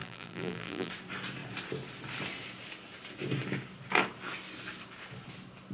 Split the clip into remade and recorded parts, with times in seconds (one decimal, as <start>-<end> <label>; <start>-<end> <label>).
0.0-0.9 remade; 0.9-5.7 recorded